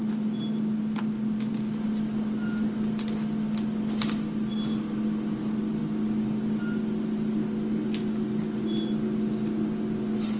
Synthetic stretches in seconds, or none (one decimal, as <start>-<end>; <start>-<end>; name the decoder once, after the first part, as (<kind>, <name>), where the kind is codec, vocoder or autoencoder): none